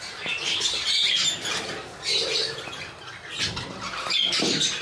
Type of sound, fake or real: real